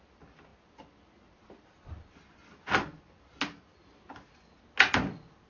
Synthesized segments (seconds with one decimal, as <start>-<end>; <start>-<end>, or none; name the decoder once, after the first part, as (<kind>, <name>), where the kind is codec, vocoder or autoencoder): none